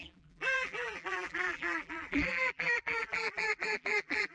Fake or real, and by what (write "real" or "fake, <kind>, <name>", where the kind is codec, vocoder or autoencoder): fake, vocoder, BigVGAN v2